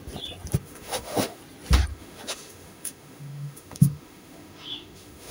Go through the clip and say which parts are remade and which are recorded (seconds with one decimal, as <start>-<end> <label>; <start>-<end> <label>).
0.0-0.6 recorded; 0.6-1.4 remade; 1.4-1.9 recorded; 1.9-5.3 remade